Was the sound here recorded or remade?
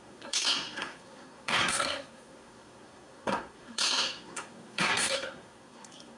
remade